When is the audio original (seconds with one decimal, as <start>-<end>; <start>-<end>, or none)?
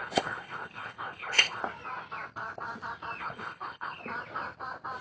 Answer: 1.6-3.2; 4.0-5.0